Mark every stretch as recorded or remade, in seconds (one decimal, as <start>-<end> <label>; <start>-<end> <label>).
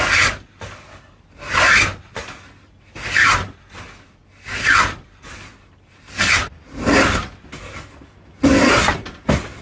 0.0-4.2 recorded; 4.2-5.5 remade; 5.5-9.6 recorded